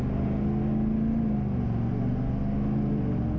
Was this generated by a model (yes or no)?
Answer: no